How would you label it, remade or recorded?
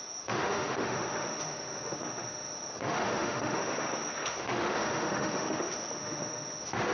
remade